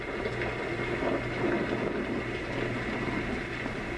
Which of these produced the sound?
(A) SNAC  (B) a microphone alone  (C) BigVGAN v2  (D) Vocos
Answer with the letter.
B